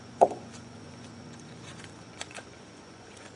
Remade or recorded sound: remade